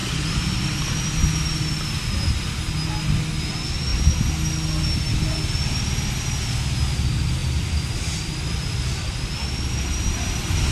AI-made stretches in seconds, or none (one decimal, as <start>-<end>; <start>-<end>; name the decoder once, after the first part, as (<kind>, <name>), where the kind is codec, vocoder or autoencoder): 0.0-1.2 (vocoder, BigVGAN v2); 7.4-9.4